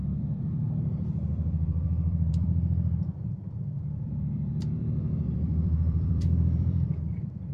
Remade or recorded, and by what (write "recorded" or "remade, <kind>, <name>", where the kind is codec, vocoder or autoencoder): remade, vocoder, BigVGAN v2